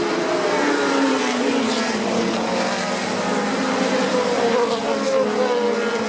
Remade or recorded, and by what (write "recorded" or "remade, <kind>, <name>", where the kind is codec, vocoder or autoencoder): recorded